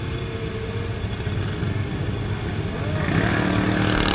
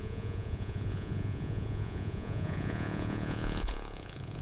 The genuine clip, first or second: first